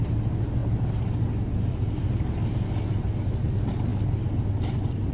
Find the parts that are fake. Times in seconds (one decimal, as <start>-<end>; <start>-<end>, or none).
none